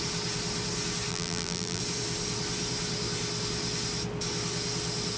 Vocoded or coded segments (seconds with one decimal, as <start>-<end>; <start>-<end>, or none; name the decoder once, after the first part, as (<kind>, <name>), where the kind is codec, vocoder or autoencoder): 1.1-1.8 (vocoder, BigVGAN v2)

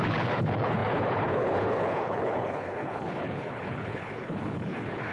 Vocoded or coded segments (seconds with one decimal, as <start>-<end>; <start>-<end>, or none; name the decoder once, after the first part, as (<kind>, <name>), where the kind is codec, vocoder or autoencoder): 0.0-5.1 (codec, HILCodec)